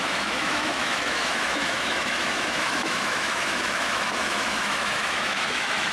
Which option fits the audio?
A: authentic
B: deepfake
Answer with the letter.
B